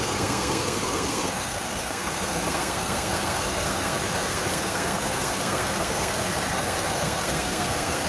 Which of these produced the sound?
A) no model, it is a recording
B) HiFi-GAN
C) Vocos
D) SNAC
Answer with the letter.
D